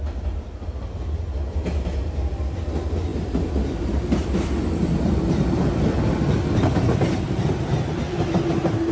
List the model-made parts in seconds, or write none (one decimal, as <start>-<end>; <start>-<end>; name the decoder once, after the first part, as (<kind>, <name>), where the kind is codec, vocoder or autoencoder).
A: none